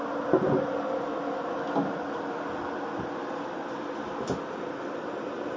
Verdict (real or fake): real